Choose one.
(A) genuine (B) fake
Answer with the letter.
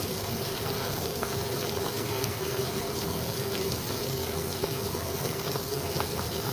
B